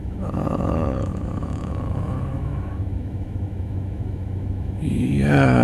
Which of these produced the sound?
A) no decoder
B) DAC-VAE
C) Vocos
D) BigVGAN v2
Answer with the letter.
B